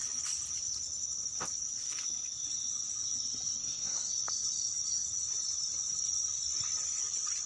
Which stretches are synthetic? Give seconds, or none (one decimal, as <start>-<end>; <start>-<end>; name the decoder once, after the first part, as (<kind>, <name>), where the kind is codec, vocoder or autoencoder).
3.6-4.1 (codec, SNAC)